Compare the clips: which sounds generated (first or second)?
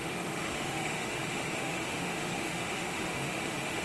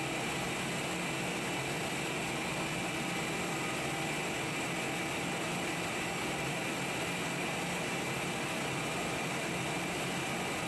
first